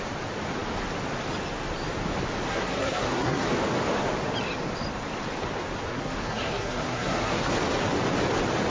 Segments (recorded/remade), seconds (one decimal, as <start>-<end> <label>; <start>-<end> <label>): 0.0-2.5 recorded; 2.5-3.5 remade; 3.5-5.9 recorded; 5.9-7.5 remade; 7.5-8.7 recorded

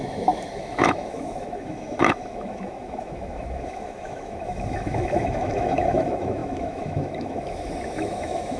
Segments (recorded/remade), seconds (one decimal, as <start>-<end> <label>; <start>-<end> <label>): 0.0-8.6 remade

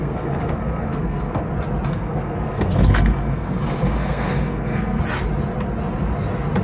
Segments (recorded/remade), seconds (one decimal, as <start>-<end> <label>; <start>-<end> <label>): 0.0-1.4 remade; 1.4-1.9 recorded; 1.9-5.0 remade; 5.0-6.6 recorded

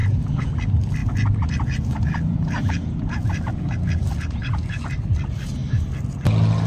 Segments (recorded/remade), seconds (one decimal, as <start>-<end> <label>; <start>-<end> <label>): 0.0-0.5 remade; 0.5-1.0 recorded; 1.0-4.8 remade; 4.8-6.7 recorded

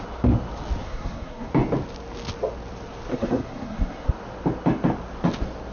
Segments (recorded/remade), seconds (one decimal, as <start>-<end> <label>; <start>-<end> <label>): 0.0-0.8 recorded; 0.8-1.5 remade; 1.5-3.1 recorded; 3.1-4.1 remade; 4.1-5.7 recorded

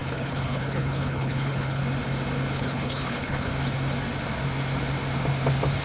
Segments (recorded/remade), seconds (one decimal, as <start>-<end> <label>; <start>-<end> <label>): 0.0-1.8 remade; 1.8-2.5 recorded; 2.5-3.5 remade; 3.5-5.8 recorded

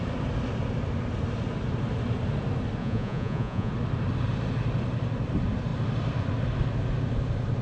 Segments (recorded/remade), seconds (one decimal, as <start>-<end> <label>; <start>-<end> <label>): 0.0-2.8 recorded; 2.8-3.7 remade; 3.7-7.6 recorded

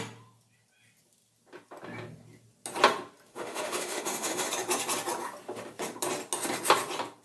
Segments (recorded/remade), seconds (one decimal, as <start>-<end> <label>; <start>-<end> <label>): 0.0-3.3 recorded; 3.3-4.5 remade; 4.5-7.2 recorded